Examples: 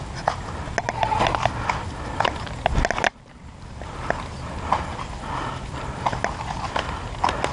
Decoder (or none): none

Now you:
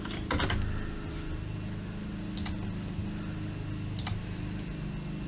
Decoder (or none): none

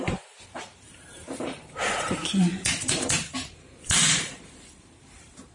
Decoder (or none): vocoder, BigVGAN v2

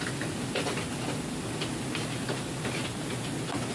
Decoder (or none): none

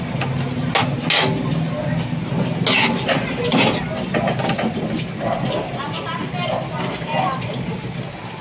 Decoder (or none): none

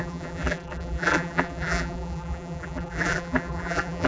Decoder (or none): vocoder, BigVGAN v2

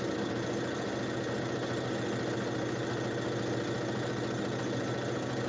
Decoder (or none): none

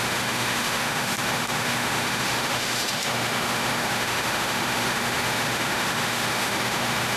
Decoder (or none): autoencoder, DAC-VAE